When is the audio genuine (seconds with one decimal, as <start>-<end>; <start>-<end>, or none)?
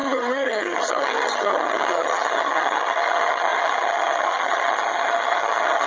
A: none